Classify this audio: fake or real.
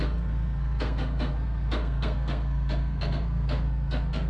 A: fake